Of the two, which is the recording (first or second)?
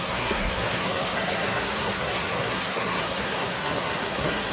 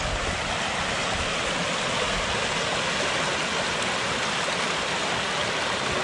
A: second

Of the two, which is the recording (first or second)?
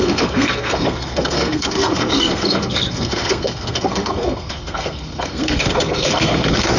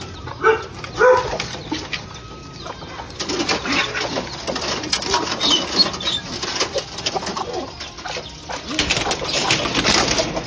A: second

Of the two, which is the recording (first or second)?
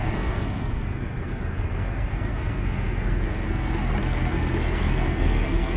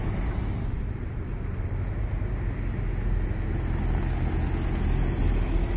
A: second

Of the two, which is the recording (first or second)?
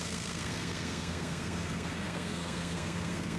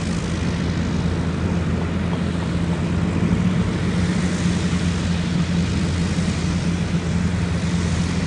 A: second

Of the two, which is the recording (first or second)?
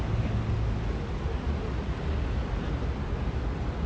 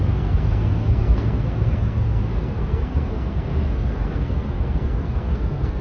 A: first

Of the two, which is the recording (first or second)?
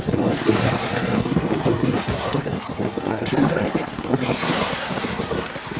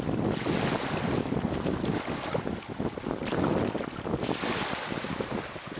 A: second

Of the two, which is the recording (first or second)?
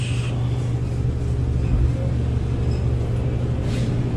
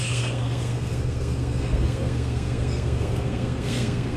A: first